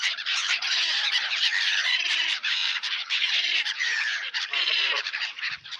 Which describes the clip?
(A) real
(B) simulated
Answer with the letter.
B